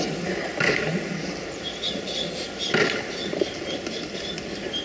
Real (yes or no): yes